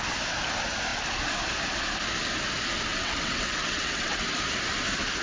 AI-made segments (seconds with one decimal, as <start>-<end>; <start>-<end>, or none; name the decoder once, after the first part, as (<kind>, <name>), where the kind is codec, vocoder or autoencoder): 2.9-4.2 (vocoder, WaveNeXt)